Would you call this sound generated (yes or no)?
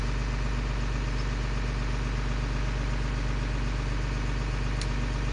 no